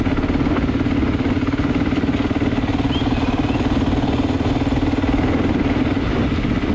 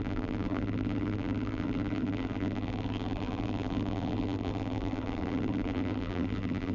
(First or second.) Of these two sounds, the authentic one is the first